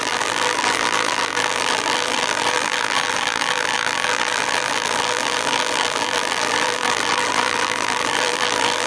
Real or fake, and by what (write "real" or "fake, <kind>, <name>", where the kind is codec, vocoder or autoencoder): fake, vocoder, BigVGAN v2